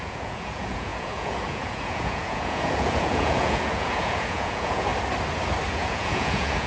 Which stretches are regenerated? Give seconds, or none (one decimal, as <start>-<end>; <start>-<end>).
0.0-4.9; 5.7-6.7